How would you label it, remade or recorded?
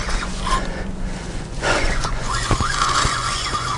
remade